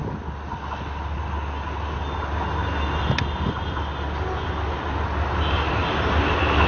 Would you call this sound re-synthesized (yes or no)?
no